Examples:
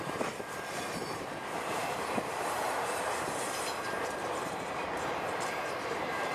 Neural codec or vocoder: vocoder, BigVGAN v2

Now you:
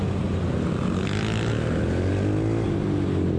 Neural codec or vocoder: none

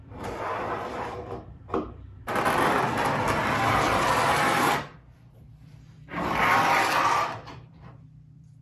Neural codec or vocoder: vocoder, BigVGAN v2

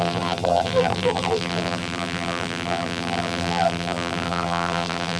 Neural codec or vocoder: vocoder, BigVGAN v2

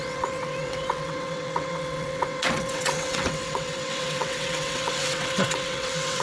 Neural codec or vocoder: vocoder, WaveNeXt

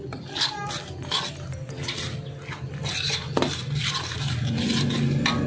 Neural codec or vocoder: none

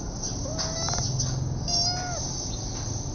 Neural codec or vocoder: none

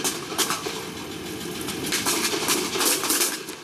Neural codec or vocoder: none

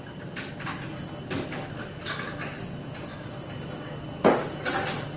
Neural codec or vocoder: none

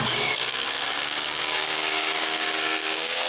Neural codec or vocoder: codec, DAC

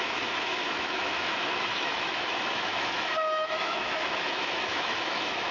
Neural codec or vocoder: autoencoder, DAC-VAE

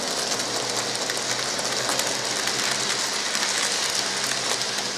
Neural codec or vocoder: none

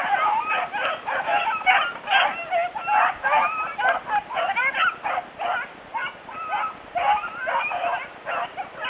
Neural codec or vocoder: none